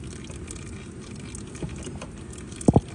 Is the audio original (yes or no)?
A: yes